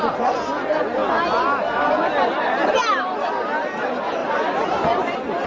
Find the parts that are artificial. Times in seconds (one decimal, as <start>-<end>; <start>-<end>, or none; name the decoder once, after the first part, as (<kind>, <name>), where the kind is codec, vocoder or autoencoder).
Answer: 4.2-5.0 (vocoder, BigVGAN v2)